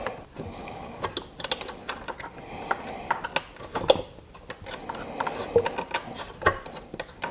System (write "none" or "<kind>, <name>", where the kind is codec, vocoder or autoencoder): none